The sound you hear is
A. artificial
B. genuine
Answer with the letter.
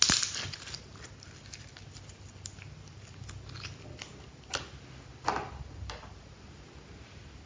B